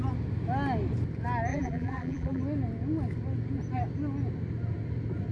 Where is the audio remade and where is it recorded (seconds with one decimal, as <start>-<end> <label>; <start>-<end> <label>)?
0.0-1.5 recorded; 1.5-2.4 remade; 2.4-5.3 recorded